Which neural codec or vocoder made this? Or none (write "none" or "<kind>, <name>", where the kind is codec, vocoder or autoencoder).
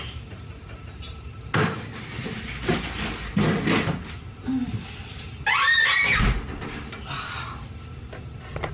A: none